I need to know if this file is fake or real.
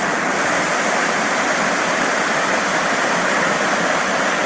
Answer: real